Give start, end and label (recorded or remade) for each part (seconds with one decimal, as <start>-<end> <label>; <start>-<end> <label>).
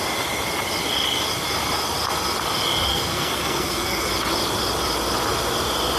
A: 0.0-2.9 recorded; 2.9-4.1 remade; 4.1-6.0 recorded